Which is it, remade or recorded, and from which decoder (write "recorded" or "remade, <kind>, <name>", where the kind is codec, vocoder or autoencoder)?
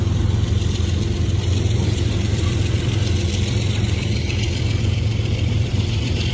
remade, vocoder, BigVGAN v2